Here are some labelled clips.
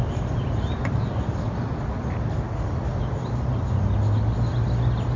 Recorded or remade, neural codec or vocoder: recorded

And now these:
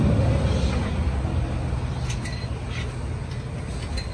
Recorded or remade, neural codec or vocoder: recorded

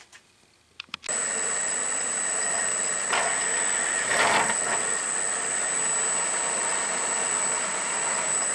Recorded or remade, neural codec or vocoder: recorded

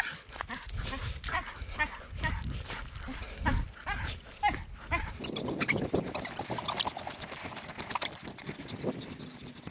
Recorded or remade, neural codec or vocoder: recorded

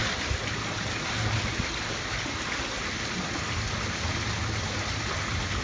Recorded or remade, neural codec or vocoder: recorded